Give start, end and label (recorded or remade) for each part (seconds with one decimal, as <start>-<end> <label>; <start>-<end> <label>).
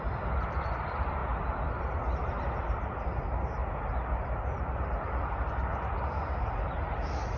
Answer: 0.0-1.2 remade; 1.2-1.7 recorded; 1.7-2.2 remade; 2.2-3.2 recorded; 3.2-3.6 remade; 3.6-7.4 recorded